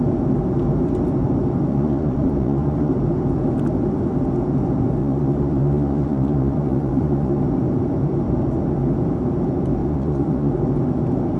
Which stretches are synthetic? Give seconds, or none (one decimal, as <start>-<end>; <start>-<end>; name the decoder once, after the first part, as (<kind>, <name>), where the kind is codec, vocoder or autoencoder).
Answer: 1.7-2.9 (vocoder, Vocos); 5.0-7.4; 9.8-10.5